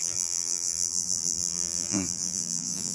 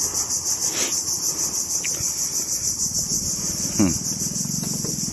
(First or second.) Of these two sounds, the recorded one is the second